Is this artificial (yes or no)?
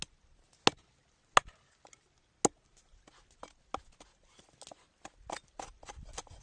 no